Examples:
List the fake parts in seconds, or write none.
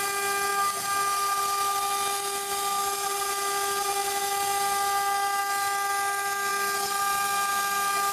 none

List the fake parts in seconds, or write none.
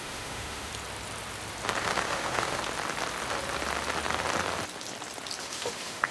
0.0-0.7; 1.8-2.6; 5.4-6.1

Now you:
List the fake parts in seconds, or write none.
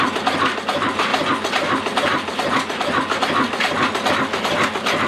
none